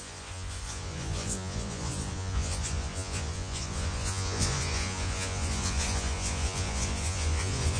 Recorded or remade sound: remade